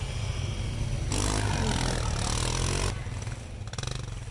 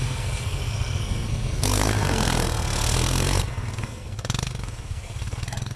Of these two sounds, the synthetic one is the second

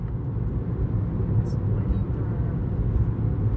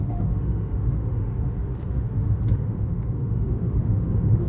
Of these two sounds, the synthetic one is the second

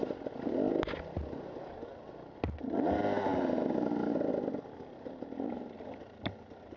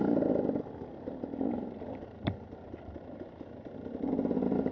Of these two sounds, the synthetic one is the second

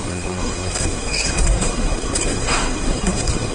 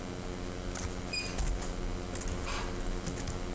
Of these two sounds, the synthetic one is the first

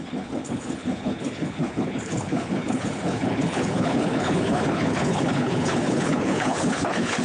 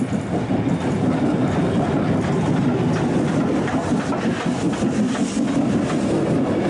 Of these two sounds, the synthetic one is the first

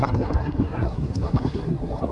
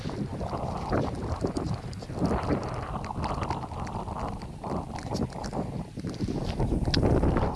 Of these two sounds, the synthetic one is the first